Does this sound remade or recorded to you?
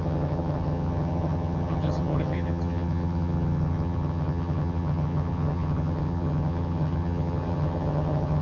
remade